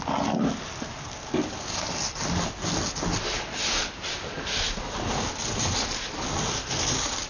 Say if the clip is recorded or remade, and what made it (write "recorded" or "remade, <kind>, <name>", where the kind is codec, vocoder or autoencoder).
recorded